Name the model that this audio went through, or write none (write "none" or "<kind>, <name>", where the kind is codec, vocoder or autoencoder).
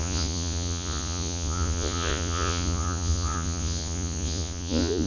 vocoder, Vocos